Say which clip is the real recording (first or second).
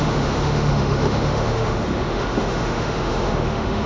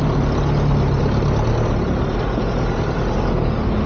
second